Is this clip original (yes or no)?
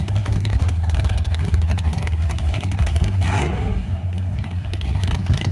no